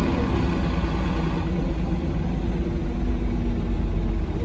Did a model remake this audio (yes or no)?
no